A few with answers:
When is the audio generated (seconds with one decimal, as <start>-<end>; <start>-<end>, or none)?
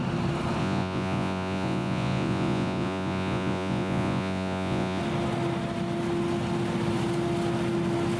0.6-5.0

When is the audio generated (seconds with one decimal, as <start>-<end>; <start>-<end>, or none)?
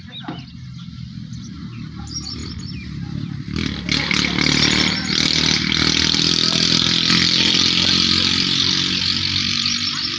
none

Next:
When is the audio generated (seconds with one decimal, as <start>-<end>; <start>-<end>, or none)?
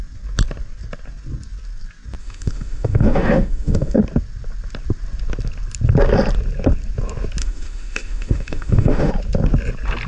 2.2-4.0; 7.4-9.1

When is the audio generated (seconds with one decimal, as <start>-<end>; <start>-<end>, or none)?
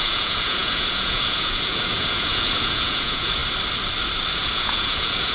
0.0-3.4; 4.3-5.3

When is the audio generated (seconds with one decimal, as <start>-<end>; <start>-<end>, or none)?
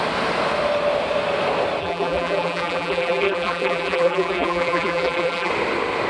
1.8-5.5